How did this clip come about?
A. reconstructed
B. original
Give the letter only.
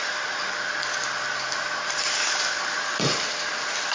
B